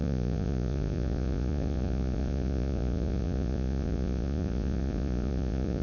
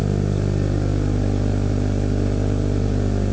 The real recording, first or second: second